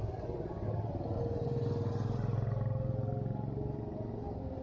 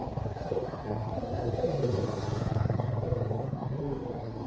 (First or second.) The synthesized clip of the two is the second